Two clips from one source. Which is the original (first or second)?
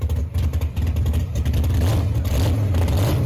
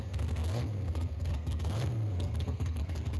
first